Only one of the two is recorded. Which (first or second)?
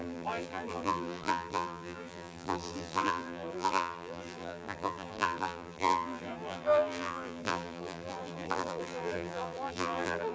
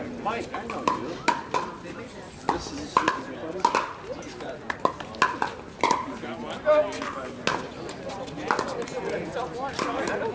second